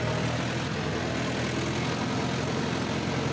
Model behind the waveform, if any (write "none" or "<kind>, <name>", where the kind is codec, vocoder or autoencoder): none